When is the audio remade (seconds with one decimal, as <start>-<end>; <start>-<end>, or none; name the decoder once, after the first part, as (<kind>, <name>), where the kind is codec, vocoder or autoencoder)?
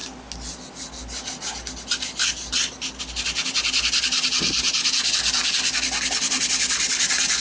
none